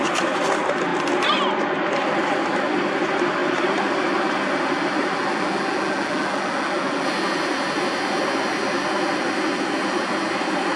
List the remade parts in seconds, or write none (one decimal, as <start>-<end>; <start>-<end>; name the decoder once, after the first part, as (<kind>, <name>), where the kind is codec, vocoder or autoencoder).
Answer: none